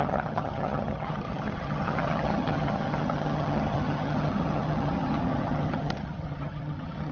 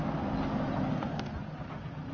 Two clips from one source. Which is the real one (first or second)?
second